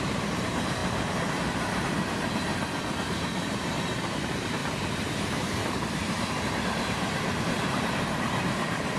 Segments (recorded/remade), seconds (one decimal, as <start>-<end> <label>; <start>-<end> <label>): 0.0-2.5 remade; 2.5-3.1 recorded; 3.1-9.0 remade